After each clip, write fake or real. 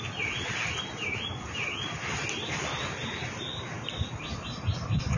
real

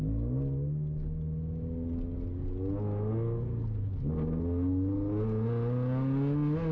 real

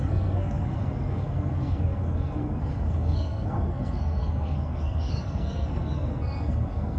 fake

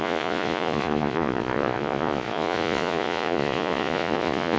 fake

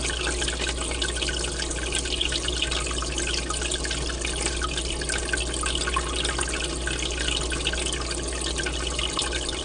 real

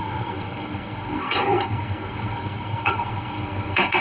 fake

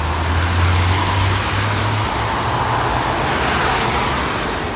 real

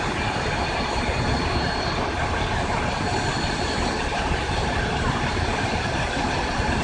fake